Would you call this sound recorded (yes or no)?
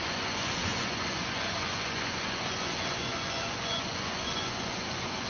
no